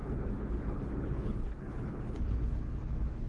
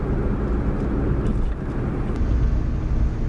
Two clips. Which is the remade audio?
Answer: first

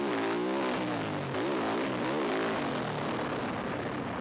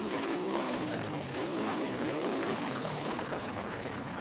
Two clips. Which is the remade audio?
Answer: second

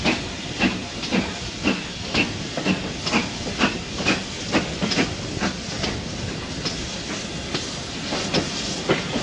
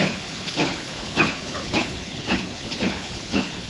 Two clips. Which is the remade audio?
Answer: second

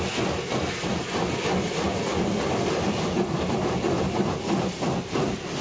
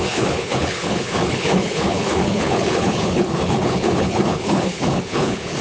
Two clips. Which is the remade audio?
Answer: second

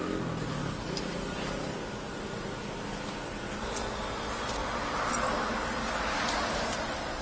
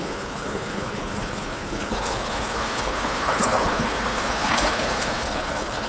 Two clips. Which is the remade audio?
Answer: second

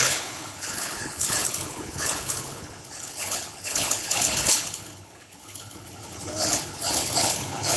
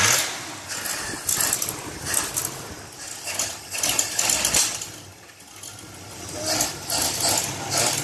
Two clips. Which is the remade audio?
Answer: first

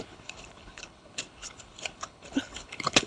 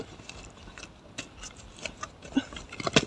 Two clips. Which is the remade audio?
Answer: first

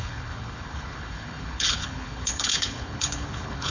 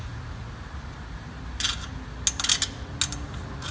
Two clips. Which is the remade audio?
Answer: first